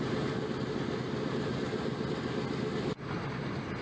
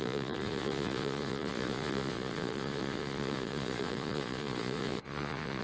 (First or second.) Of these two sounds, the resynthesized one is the second